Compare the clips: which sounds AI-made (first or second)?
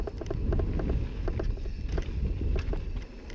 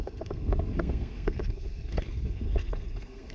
second